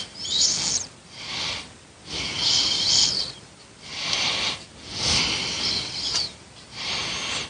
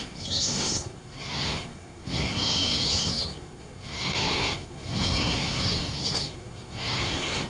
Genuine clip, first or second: first